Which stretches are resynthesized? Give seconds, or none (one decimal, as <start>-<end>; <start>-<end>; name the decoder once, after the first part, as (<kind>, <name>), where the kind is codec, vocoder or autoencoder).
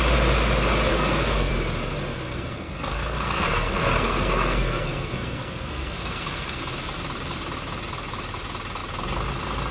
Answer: 0.9-1.5 (codec, SNAC); 2.1-6.6